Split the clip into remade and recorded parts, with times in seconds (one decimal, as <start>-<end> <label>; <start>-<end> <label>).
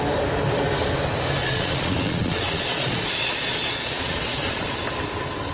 0.0-1.4 recorded; 1.4-4.7 remade; 4.7-5.5 recorded